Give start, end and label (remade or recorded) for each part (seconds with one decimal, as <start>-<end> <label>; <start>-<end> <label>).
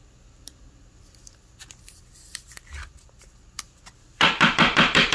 0.0-5.1 recorded